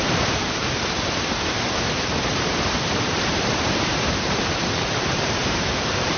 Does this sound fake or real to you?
fake